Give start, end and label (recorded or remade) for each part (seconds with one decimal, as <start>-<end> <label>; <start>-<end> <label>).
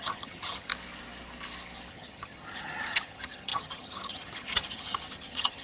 0.0-0.7 remade; 0.7-1.9 recorded; 1.9-5.6 remade